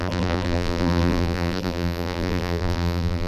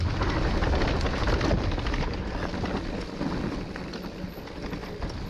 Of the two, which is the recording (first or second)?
second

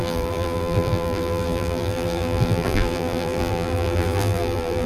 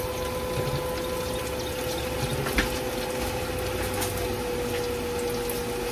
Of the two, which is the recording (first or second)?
second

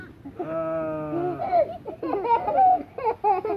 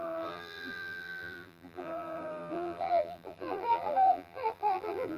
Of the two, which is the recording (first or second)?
first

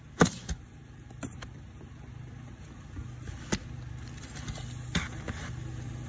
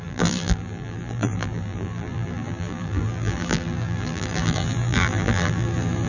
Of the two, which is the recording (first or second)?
first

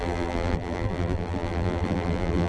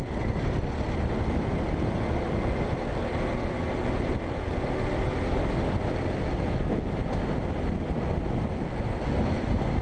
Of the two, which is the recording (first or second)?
second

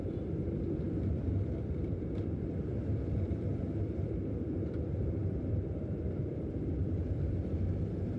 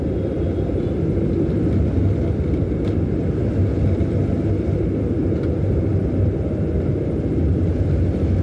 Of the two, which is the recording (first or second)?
second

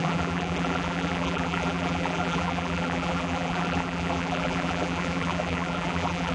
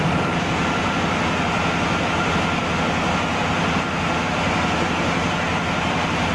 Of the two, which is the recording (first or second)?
second